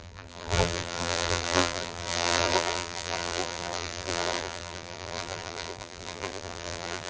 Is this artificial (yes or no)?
yes